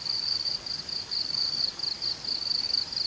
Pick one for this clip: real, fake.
real